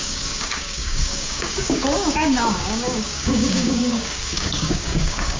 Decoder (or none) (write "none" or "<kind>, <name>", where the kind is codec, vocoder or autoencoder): codec, DAC